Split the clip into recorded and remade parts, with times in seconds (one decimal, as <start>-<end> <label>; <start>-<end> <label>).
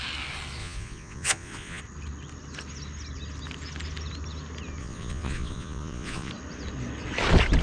0.0-0.6 recorded; 0.6-1.8 remade; 1.8-4.8 recorded; 4.8-6.3 remade; 6.3-7.6 recorded